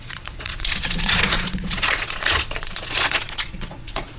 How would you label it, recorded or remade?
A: remade